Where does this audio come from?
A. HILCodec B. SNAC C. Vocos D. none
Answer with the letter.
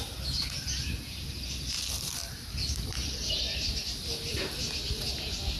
D